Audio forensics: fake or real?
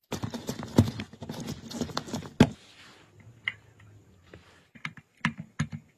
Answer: real